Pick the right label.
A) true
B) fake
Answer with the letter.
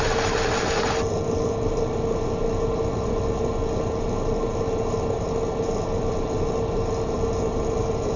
A